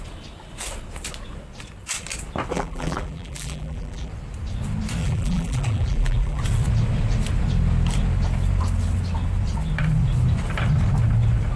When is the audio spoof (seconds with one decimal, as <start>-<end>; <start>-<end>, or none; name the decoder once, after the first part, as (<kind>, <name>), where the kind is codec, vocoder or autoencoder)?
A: 2.5-4.1 (vocoder, BigVGAN v2); 5.0-6.4